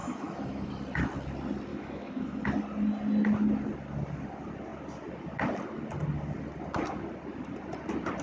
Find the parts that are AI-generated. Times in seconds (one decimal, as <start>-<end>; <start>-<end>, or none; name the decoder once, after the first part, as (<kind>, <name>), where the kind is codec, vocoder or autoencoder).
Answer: 0.0-0.7 (autoencoder, DAC-VAE); 1.7-2.4